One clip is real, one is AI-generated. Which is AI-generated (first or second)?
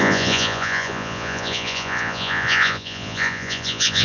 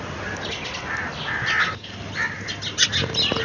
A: first